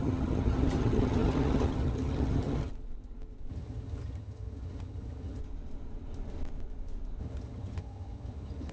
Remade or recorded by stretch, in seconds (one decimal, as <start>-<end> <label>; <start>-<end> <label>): 0.0-2.7 remade; 2.7-3.5 recorded; 3.5-5.4 remade; 5.4-7.2 recorded; 7.2-8.7 remade